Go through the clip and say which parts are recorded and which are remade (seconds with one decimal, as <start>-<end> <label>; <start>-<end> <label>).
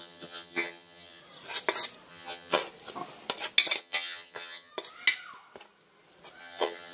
0.0-1.2 remade; 1.2-2.1 recorded; 2.1-2.6 remade; 2.6-3.8 recorded; 3.8-4.7 remade; 4.7-6.4 recorded; 6.4-6.9 remade